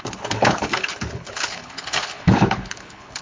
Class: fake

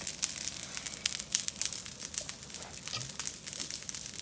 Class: real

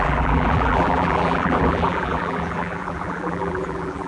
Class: fake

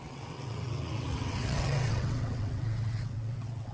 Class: fake